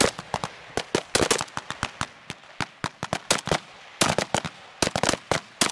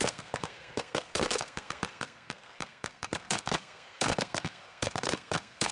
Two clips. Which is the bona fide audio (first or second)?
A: first